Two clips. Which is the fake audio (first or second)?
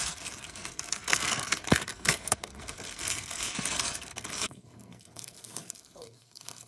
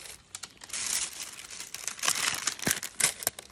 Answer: first